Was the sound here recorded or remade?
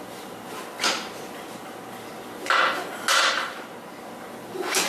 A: recorded